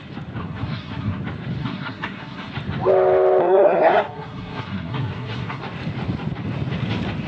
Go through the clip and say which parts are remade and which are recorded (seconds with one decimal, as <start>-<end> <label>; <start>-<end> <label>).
0.0-0.4 recorded; 0.4-1.2 remade; 1.2-1.6 recorded; 1.6-2.5 remade; 2.5-3.4 recorded; 3.4-5.6 remade; 5.6-7.3 recorded